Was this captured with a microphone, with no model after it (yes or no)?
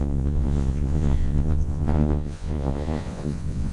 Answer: no